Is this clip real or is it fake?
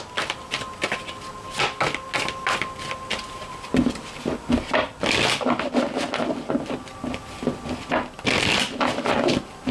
real